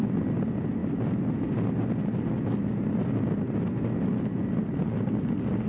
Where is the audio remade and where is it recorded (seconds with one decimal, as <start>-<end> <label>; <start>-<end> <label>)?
0.0-5.7 recorded